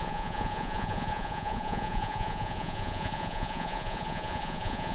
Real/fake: fake